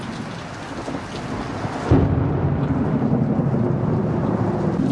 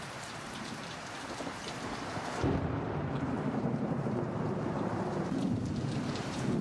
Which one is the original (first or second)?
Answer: first